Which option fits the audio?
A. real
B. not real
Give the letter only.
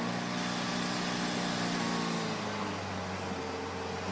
A